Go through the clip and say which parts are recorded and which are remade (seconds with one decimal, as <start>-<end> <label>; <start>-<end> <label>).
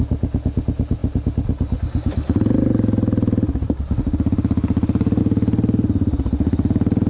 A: 0.0-7.1 recorded